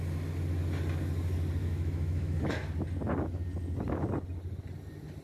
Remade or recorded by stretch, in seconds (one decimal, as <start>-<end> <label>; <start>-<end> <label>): 0.0-1.6 recorded; 1.6-2.4 remade; 2.4-5.2 recorded